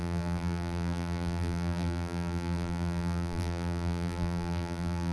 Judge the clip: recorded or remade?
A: remade